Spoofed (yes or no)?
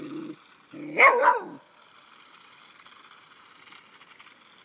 no